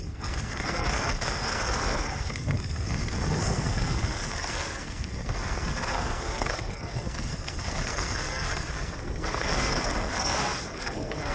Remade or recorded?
remade